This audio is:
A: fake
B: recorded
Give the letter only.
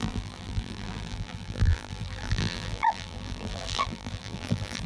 A